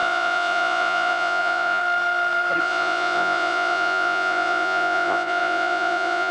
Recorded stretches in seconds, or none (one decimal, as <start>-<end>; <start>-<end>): 1.8-2.6